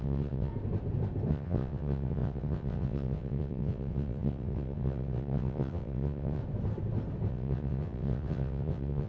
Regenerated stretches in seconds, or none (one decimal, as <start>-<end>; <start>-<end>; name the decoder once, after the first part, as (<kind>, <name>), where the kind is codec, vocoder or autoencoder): 0.0-0.5 (vocoder, WaveNeXt); 1.3-6.4; 7.3-9.1